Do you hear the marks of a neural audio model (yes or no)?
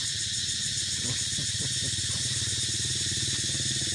yes